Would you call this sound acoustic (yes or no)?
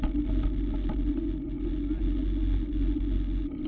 yes